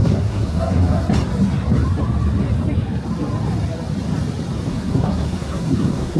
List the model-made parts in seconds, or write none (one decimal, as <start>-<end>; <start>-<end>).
0.0-1.0; 4.7-6.2